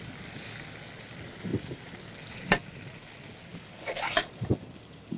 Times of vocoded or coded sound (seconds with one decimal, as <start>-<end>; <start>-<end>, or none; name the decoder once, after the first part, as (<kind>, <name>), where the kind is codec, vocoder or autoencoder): 1.5-2.1 (vocoder, BigVGAN v2); 3.5-5.2